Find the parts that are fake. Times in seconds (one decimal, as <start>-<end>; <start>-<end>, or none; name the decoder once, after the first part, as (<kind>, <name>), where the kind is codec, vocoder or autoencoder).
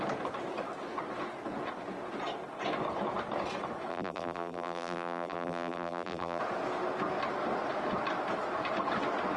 3.9-6.4 (vocoder, BigVGAN v2)